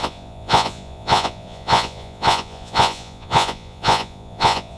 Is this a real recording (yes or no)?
no